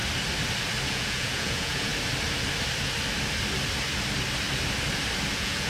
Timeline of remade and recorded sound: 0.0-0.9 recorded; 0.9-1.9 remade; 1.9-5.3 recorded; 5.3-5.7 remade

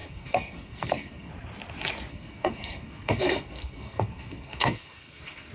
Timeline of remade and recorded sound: 0.0-1.3 remade; 1.3-2.1 recorded; 2.1-5.5 remade

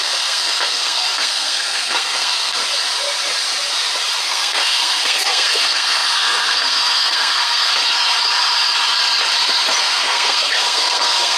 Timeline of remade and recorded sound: 0.0-2.6 remade; 2.6-4.2 recorded; 4.2-7.7 remade; 7.7-9.8 recorded; 9.8-11.4 remade